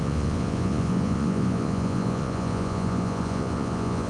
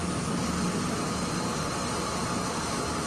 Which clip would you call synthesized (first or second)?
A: first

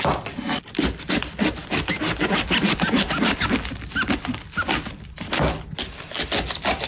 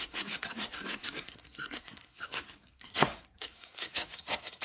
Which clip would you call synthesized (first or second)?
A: second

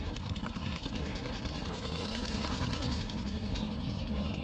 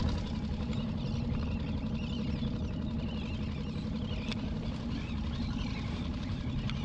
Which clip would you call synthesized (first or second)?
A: first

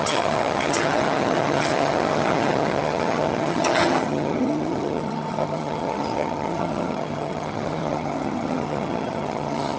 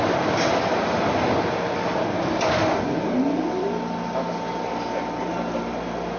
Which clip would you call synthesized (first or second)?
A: first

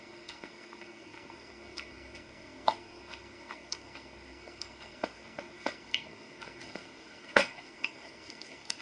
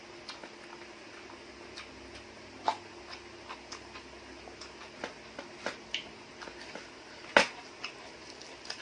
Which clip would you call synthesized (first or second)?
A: first